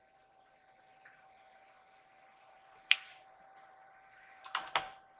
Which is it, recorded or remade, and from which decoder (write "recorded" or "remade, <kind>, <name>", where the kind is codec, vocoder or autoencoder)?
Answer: remade, vocoder, BigVGAN v2